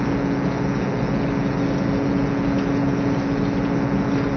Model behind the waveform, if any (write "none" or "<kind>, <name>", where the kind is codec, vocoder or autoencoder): none